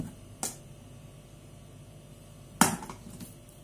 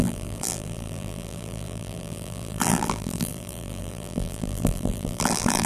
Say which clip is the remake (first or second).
second